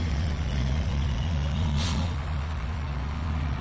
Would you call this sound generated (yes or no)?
yes